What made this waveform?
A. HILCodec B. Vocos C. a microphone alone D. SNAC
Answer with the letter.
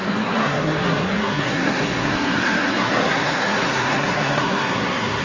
D